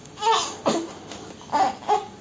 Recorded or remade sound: recorded